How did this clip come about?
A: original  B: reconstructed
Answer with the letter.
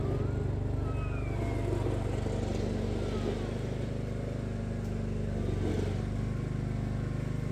A